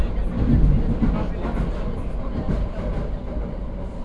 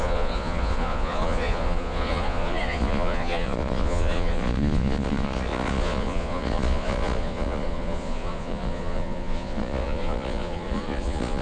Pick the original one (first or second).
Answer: first